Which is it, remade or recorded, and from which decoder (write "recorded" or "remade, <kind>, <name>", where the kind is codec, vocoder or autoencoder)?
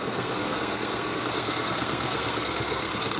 remade, codec, SNAC